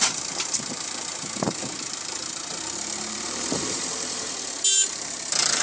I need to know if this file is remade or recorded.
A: remade